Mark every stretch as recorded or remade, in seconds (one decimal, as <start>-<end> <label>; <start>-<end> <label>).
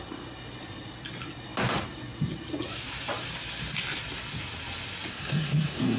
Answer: 0.0-5.1 recorded; 5.1-6.0 remade